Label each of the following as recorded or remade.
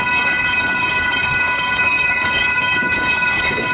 remade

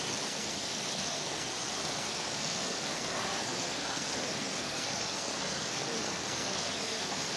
remade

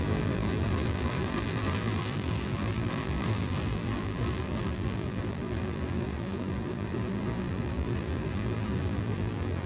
remade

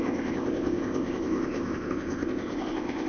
remade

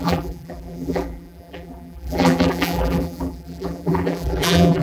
remade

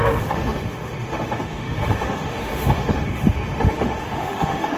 remade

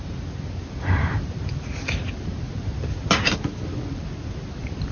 recorded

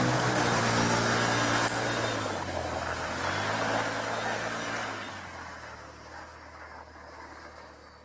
recorded